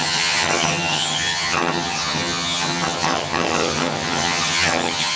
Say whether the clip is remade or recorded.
remade